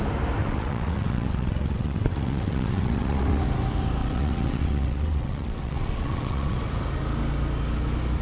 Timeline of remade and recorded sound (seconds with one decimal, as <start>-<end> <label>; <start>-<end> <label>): 0.0-0.4 recorded; 0.4-3.4 remade; 3.4-4.0 recorded; 4.0-6.6 remade; 6.6-8.2 recorded